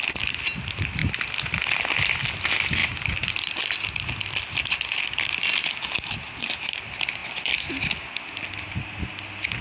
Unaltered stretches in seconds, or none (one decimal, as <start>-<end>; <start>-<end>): 0.0-9.6